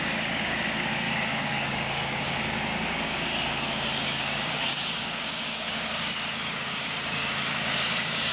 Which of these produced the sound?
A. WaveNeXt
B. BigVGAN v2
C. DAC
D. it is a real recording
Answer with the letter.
C